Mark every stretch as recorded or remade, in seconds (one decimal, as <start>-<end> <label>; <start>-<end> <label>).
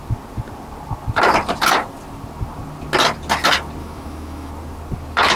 0.0-3.8 recorded; 3.8-4.5 remade; 4.5-5.4 recorded